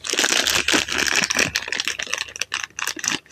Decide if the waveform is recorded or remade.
recorded